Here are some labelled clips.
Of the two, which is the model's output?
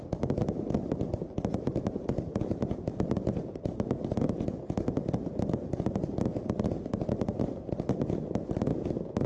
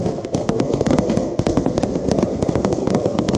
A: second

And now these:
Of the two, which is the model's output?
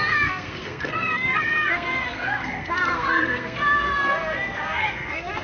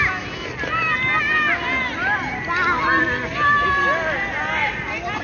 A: first